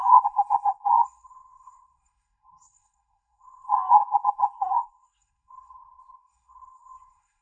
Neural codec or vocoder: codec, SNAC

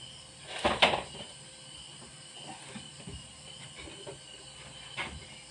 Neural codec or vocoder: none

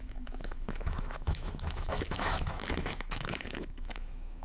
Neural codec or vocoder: autoencoder, DAC-VAE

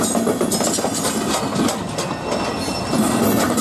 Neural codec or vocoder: none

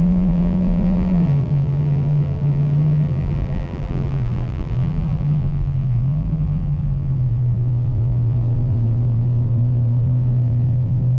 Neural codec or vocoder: vocoder, BigVGAN v2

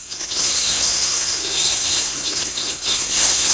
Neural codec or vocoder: codec, SNAC